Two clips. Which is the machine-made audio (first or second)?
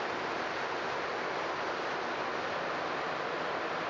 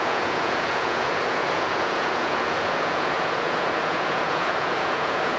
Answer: second